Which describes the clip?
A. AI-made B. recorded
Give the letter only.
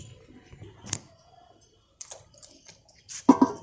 B